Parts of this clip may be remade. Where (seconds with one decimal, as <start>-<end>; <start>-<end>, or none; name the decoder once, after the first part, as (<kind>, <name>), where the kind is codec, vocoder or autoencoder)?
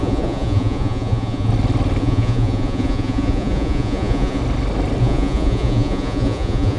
0.0-1.5 (vocoder, Vocos); 2.0-4.4; 5.0-6.8